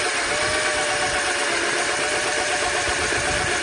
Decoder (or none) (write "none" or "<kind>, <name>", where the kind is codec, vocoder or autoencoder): none